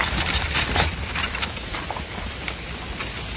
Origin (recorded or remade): recorded